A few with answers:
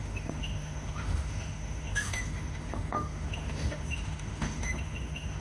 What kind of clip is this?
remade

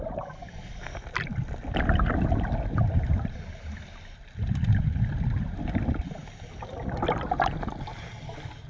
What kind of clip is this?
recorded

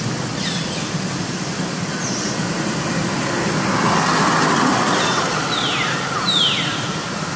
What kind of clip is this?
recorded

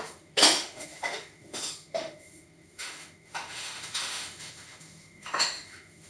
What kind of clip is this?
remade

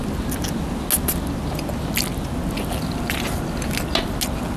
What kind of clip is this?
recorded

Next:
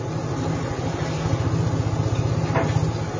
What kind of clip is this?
recorded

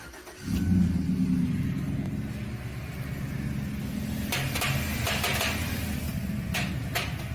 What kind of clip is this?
recorded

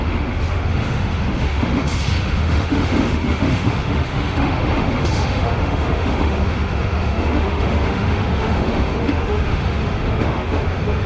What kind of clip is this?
remade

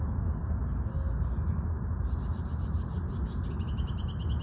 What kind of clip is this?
recorded